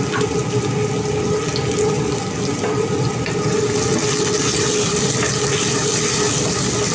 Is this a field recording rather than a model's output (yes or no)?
yes